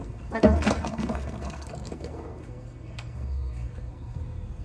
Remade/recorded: remade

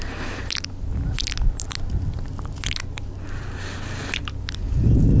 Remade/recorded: recorded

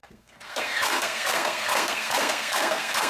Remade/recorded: remade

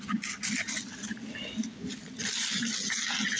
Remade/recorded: recorded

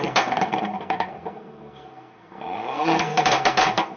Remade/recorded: remade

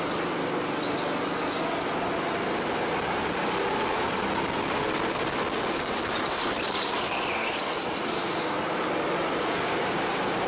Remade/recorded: recorded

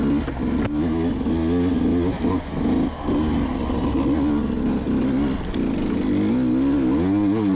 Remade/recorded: recorded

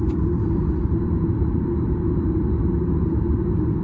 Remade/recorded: recorded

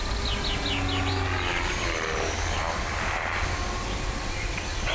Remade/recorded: recorded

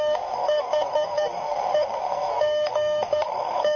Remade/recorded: remade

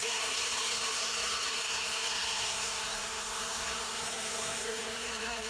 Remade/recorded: remade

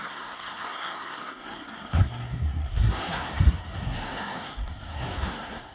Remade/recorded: remade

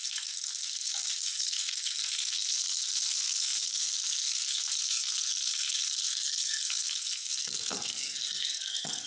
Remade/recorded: remade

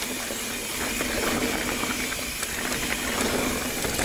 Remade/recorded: recorded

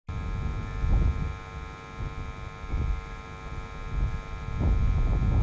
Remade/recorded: recorded